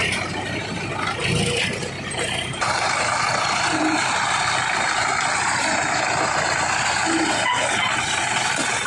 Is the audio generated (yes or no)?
no